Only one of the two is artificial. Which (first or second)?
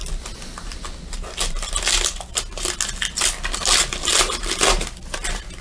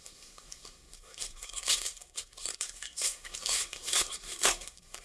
second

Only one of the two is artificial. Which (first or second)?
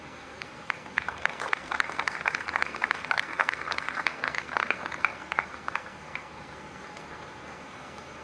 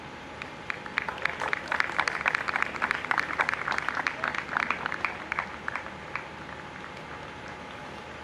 first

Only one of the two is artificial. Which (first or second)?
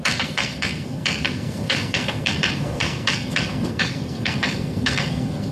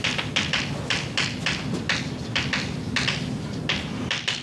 first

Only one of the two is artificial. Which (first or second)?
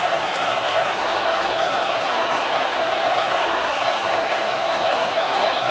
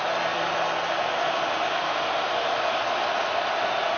first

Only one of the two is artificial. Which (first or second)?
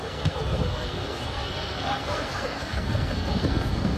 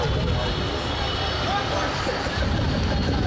first